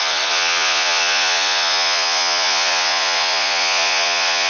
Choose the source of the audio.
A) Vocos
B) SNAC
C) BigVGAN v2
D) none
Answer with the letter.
A